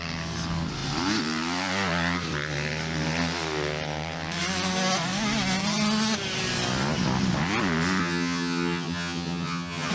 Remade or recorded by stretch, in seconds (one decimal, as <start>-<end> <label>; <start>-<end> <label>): 0.0-8.0 recorded; 8.0-9.9 remade